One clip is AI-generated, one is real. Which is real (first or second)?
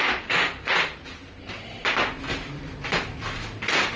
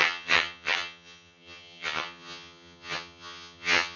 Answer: first